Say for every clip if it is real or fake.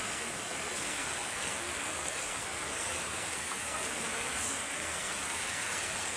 fake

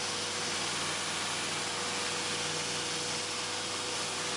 real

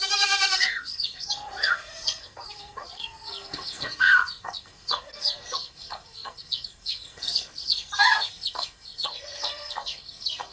fake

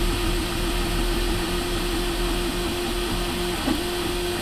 real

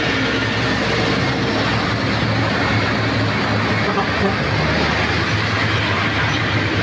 real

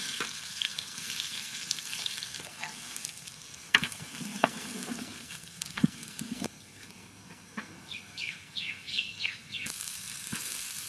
fake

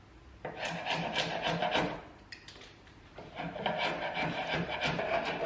real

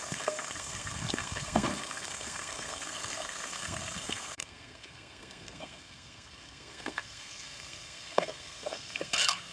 fake